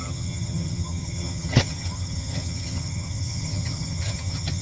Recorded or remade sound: remade